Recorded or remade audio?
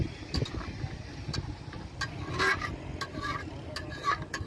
recorded